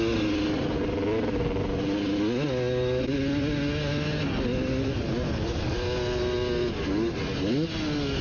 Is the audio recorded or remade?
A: recorded